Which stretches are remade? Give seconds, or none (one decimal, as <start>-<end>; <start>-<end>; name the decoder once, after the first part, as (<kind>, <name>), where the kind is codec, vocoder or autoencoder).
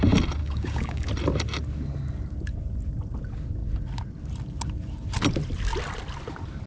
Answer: 0.4-1.1 (codec, DAC)